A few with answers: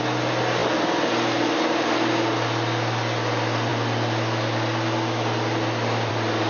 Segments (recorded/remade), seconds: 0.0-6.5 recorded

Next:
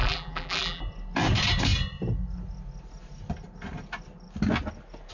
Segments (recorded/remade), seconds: 0.0-0.8 remade; 0.8-5.1 recorded

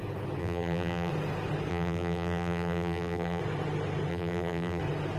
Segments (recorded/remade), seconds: 0.0-0.4 recorded; 0.4-1.1 remade; 1.1-1.7 recorded; 1.7-3.4 remade; 3.4-4.1 recorded; 4.1-4.8 remade; 4.8-5.2 recorded

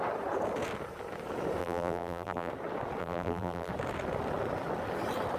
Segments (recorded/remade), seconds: 0.0-1.6 recorded; 1.6-2.5 remade; 2.5-3.0 recorded; 3.0-3.7 remade; 3.7-5.4 recorded

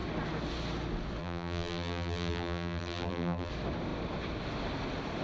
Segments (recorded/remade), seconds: 0.0-1.2 recorded; 1.2-3.5 remade; 3.5-5.2 recorded

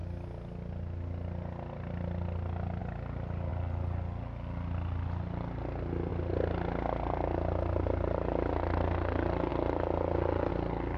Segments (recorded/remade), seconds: 0.0-11.0 recorded